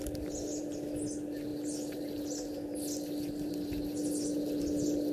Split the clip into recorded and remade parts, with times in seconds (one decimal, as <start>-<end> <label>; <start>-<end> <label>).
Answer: 0.0-5.1 recorded